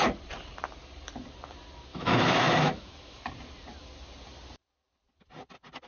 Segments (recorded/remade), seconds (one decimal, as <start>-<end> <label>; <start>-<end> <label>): 0.0-1.9 recorded; 1.9-3.3 remade; 3.3-5.9 recorded